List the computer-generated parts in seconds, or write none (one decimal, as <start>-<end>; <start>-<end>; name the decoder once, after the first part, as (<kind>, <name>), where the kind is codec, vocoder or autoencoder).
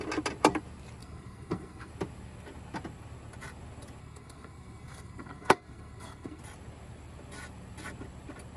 1.0-1.9 (codec, SNAC); 4.0-6.4